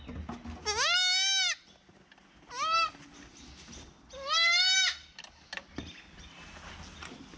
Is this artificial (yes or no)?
no